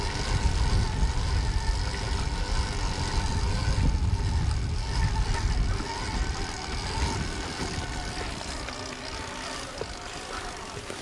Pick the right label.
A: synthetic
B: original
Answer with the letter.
B